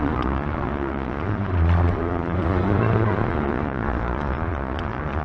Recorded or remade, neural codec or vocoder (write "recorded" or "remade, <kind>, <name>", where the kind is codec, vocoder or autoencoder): remade, vocoder, Vocos